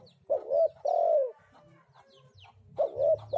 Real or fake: real